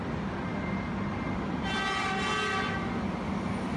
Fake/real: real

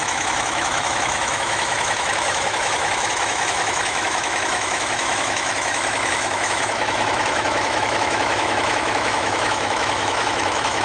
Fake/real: fake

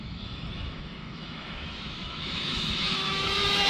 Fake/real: fake